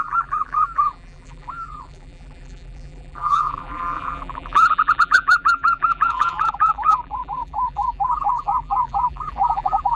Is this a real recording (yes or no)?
no